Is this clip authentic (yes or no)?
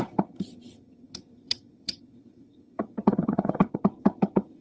no